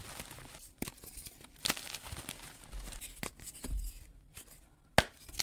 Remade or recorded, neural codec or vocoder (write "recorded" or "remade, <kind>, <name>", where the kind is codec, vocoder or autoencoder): recorded